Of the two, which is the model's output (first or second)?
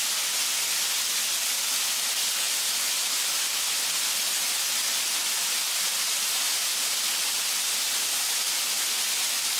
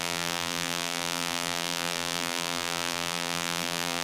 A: second